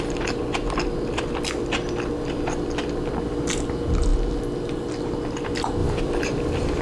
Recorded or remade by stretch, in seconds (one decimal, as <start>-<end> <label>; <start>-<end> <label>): 0.0-6.8 recorded